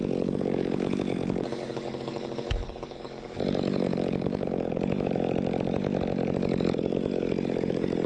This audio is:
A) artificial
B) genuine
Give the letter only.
A